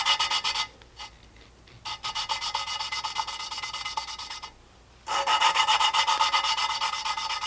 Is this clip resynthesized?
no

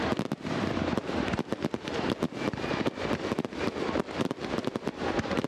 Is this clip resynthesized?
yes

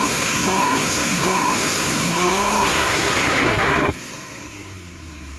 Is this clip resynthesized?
yes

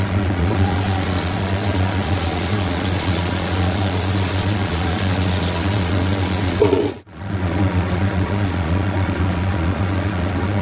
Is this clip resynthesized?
yes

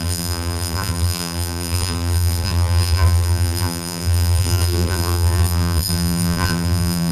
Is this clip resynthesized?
yes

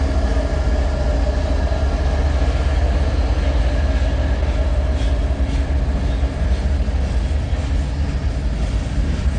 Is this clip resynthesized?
no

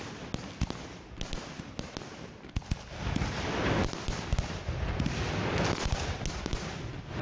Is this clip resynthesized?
no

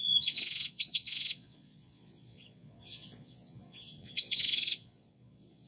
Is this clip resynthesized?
yes